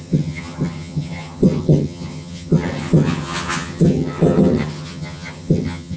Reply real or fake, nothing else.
fake